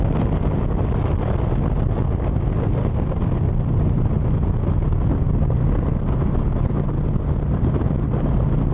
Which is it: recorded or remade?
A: recorded